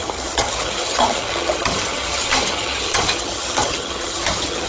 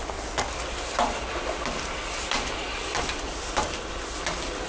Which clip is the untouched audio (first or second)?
second